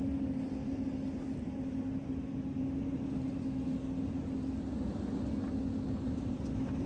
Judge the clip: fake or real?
real